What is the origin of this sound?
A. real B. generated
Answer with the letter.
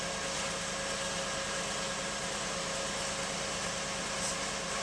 A